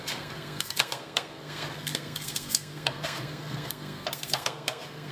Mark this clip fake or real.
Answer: fake